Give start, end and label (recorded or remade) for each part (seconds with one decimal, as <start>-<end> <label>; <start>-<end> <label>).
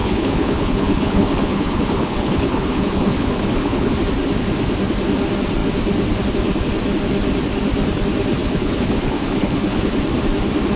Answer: 0.0-3.9 remade; 3.9-8.4 recorded; 8.4-9.9 remade; 9.9-10.8 recorded